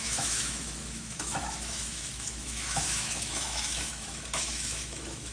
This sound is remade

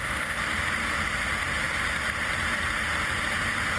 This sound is recorded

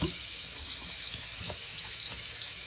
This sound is remade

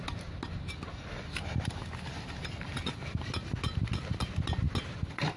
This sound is recorded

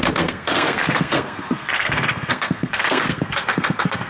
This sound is remade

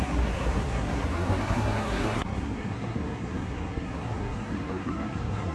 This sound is remade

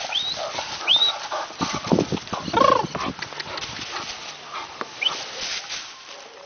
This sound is recorded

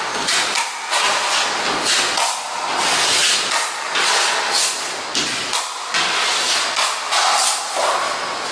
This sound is recorded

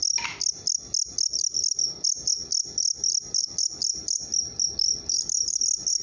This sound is recorded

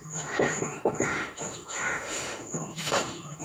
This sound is remade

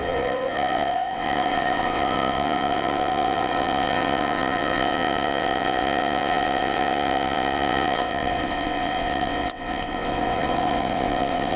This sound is remade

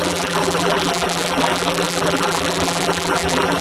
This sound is remade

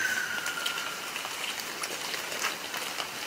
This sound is recorded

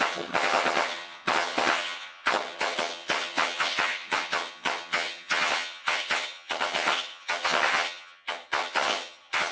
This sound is remade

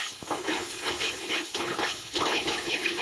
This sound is remade